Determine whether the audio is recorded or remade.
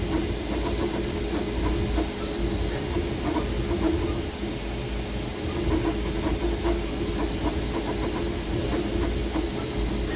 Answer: recorded